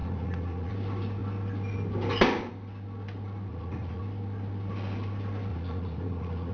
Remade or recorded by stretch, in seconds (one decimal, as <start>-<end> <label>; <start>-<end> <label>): 0.0-0.7 remade; 0.7-3.5 recorded; 3.5-4.0 remade; 4.0-5.5 recorded; 5.5-6.5 remade